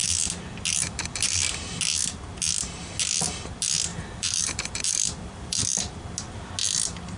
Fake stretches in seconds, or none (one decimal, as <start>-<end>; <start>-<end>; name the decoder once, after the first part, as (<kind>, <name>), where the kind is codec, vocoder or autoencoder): 3.9-5.8 (vocoder, BigVGAN v2)